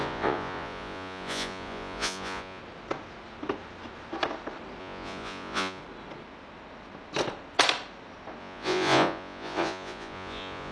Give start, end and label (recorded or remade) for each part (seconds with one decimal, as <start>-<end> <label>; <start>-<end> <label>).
0.0-2.6 remade; 2.6-4.8 recorded; 4.8-5.8 remade; 5.8-8.4 recorded; 8.4-10.7 remade